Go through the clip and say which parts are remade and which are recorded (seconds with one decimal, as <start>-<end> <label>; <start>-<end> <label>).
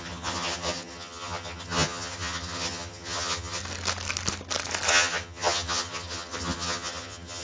0.0-3.6 remade; 3.6-4.9 recorded; 4.9-7.4 remade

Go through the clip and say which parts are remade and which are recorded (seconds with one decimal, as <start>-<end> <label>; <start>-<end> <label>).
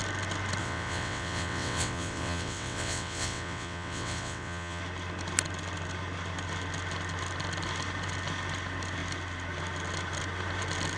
0.0-0.6 recorded; 0.6-4.8 remade; 4.8-11.0 recorded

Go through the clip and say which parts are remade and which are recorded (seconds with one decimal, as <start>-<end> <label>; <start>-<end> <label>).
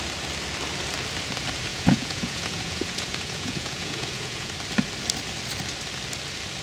0.0-1.7 recorded; 1.7-4.5 remade; 4.5-6.6 recorded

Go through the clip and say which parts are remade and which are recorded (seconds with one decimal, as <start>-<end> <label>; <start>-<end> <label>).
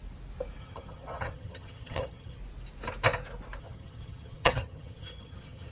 0.0-0.6 recorded; 0.6-2.4 remade; 2.4-3.6 recorded; 3.6-5.7 remade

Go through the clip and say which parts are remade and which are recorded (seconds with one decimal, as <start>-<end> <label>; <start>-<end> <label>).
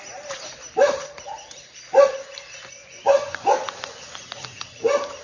0.0-2.8 recorded; 2.8-3.5 remade; 3.5-5.2 recorded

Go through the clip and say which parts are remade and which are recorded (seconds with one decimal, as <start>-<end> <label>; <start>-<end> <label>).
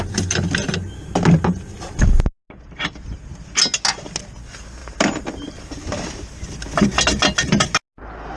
0.0-4.8 recorded; 4.8-6.5 remade; 6.5-8.4 recorded